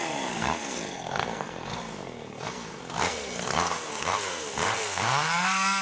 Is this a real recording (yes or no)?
no